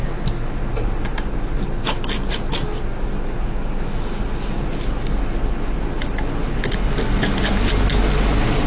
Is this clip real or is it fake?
real